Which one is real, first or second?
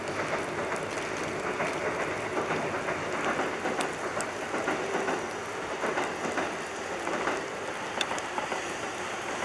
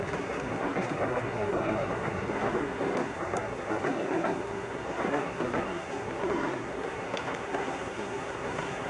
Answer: first